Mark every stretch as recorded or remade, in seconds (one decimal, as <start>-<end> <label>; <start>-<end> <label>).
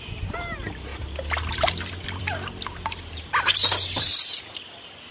0.0-5.1 recorded